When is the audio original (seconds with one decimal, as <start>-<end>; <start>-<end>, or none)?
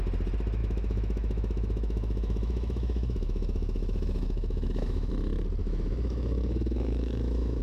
0.0-0.6; 5.1-5.6